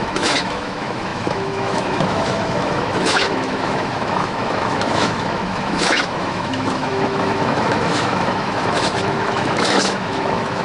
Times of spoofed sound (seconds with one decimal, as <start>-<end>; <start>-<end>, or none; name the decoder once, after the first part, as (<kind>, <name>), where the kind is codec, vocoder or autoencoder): 0.0-10.6 (autoencoder, DAC-VAE)